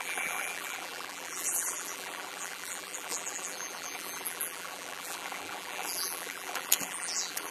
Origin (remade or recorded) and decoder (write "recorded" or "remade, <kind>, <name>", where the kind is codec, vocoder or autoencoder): remade, vocoder, BigVGAN v2